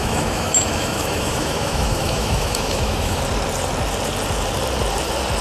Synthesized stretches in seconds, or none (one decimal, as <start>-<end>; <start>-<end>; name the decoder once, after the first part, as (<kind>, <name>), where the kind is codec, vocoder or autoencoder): 0.0-3.2 (autoencoder, DAC-VAE)